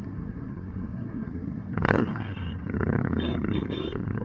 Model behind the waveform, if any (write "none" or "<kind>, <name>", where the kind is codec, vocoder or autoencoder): codec, SNAC